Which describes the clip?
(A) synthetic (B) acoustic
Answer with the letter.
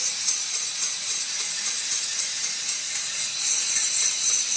A